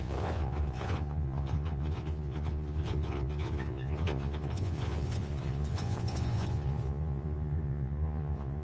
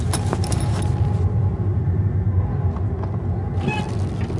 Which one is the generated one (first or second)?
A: first